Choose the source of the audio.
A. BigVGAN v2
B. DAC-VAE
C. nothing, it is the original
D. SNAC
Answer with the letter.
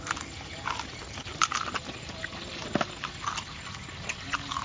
C